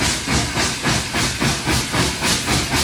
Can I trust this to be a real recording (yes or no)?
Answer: yes